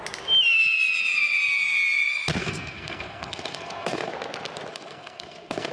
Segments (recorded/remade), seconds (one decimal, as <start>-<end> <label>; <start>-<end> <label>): 0.0-2.4 recorded; 2.4-4.1 remade; 4.1-4.7 recorded; 4.7-5.7 remade